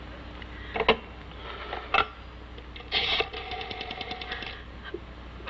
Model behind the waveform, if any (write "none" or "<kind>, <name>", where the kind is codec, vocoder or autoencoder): none